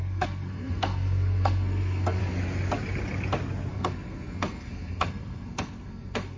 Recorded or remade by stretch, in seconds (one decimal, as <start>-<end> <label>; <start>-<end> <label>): 0.0-2.2 remade; 2.2-3.7 recorded; 3.7-6.4 remade